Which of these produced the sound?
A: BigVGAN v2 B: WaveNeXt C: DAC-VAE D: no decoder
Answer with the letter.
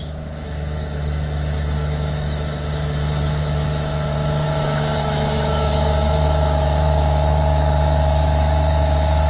C